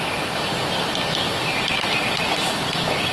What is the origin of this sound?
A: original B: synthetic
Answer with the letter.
A